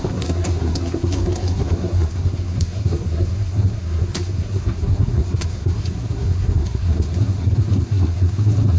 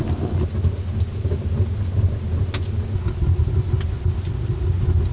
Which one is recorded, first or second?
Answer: second